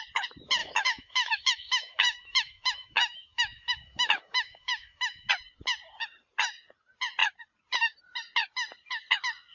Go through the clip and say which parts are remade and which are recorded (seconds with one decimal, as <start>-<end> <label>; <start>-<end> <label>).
0.0-0.6 recorded; 0.6-5.3 remade; 5.3-9.5 recorded